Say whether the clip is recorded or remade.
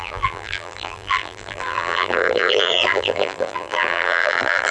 remade